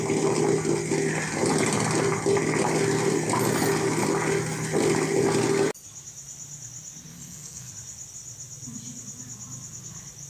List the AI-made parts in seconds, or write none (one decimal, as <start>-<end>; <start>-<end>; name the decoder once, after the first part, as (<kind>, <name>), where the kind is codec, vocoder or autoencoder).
7.1-7.7 (codec, SNAC)